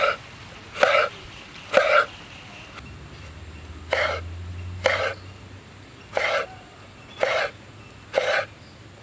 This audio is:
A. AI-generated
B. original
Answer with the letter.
B